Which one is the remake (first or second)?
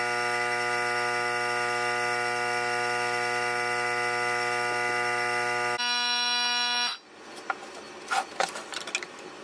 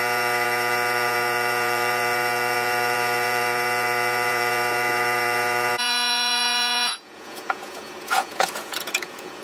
second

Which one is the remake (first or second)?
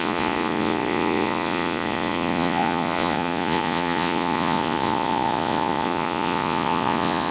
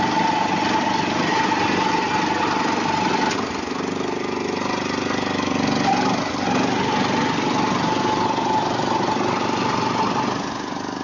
first